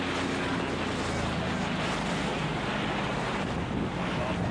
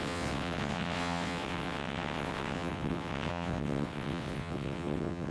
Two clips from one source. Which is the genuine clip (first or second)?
first